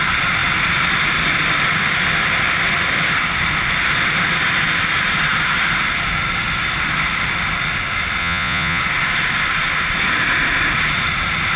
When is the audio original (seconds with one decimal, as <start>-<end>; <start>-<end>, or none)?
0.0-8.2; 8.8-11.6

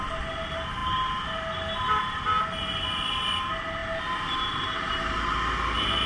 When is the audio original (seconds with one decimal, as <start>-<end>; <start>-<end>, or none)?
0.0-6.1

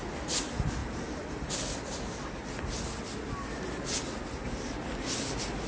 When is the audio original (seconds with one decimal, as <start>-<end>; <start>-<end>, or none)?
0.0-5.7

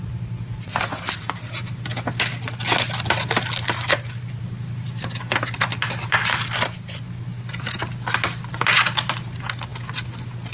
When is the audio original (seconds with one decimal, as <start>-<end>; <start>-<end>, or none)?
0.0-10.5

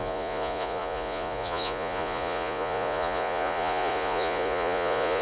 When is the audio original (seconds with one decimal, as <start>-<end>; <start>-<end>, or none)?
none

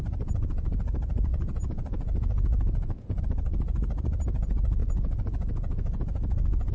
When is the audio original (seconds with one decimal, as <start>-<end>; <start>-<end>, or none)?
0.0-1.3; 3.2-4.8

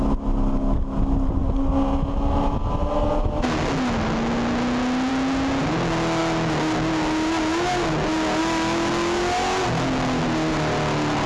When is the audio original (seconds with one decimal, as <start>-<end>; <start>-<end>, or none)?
0.0-11.3